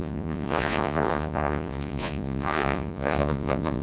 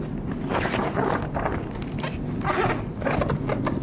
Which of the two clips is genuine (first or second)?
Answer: second